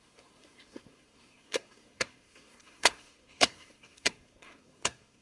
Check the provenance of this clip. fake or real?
fake